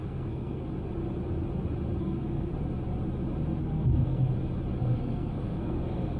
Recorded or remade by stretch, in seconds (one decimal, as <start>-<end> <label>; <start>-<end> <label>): 0.0-0.7 remade; 0.7-2.0 recorded; 2.0-2.5 remade; 2.5-3.6 recorded; 3.6-4.3 remade; 4.3-4.8 recorded; 4.8-6.2 remade